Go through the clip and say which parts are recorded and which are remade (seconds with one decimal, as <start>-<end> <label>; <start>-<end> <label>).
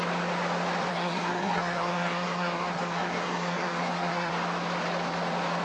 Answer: 0.0-0.9 recorded; 0.9-4.3 remade; 4.3-5.6 recorded